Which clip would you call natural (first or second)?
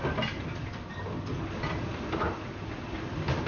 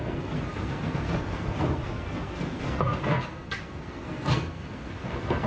first